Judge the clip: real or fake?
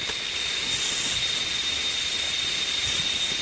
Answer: real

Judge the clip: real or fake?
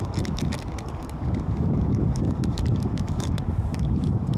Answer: fake